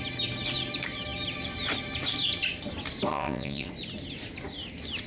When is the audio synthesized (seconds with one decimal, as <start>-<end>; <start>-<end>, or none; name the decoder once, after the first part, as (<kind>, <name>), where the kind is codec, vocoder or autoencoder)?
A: 3.1-3.7 (vocoder, WaveNeXt)